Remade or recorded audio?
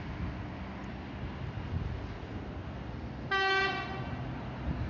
recorded